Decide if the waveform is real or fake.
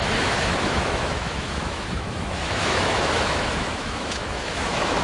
fake